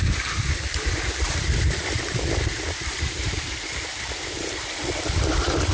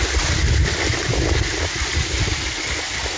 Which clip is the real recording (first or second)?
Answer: second